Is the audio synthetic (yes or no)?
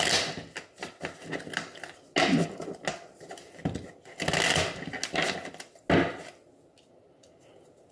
no